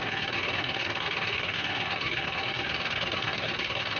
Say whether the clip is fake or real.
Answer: fake